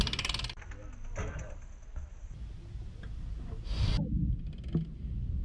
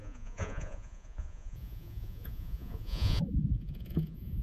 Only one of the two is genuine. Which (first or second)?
first